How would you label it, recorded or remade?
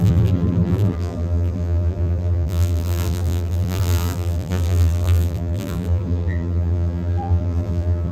remade